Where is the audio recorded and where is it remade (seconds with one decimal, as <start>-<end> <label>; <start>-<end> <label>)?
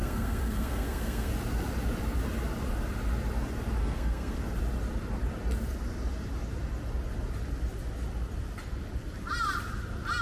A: 0.0-1.3 remade; 1.3-3.8 recorded; 3.8-4.4 remade; 4.4-10.2 recorded